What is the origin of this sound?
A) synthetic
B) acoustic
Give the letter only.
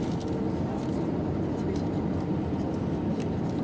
B